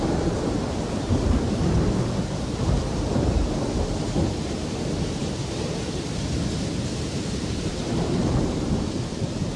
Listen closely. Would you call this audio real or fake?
fake